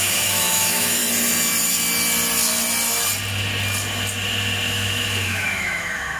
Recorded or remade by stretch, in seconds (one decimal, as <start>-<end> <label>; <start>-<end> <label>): 0.0-1.0 remade; 1.0-4.7 recorded; 4.7-6.2 remade